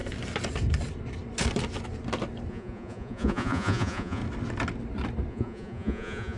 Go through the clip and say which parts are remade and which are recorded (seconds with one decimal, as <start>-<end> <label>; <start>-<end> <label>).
0.0-2.5 recorded; 2.5-4.2 remade; 4.2-5.3 recorded; 5.3-6.4 remade